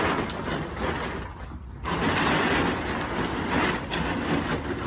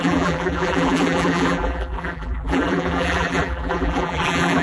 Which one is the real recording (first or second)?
first